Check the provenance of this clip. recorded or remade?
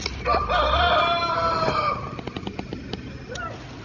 recorded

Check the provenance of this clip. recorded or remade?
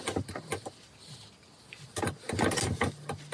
recorded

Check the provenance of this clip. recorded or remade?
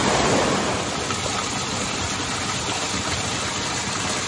recorded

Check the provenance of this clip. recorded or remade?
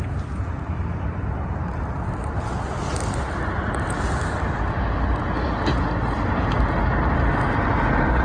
recorded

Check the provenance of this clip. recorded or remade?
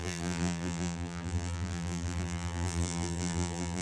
remade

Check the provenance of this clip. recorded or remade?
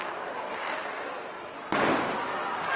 recorded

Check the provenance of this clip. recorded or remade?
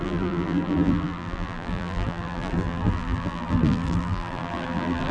remade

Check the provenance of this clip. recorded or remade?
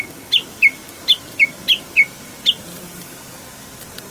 recorded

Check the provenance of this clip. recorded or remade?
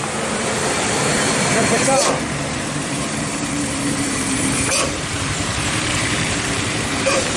remade